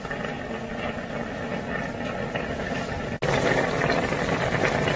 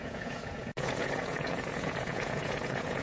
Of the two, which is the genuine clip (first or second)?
first